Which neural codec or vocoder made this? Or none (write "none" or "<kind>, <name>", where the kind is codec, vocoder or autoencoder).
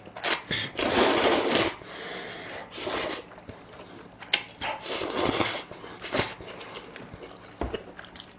none